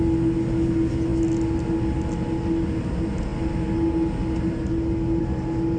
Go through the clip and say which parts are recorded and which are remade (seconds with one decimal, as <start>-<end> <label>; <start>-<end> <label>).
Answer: 0.0-5.8 recorded